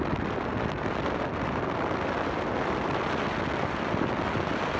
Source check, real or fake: real